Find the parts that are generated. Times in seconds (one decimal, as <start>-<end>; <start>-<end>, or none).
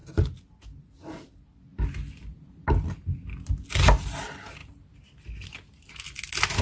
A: none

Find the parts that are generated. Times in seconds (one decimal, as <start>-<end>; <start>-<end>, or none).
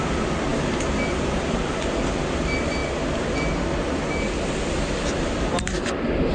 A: none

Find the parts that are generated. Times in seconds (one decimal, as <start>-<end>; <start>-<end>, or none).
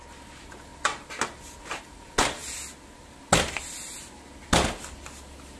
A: none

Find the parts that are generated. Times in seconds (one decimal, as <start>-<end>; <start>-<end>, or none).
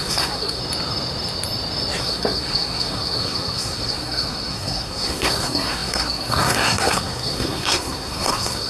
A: 0.0-0.6; 2.0-8.7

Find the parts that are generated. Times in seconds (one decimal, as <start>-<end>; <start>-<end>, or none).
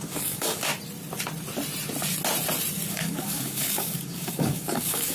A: 0.0-0.7; 2.9-5.1